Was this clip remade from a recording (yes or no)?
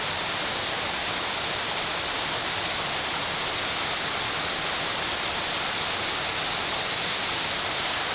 no